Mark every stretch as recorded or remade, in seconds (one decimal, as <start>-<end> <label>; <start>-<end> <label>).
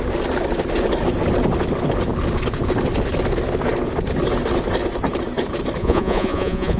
0.0-5.8 recorded; 5.8-6.8 remade